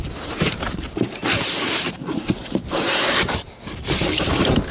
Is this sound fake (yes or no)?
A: yes